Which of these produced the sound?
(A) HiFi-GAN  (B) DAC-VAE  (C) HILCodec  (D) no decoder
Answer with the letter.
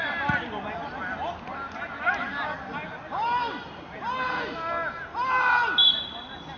D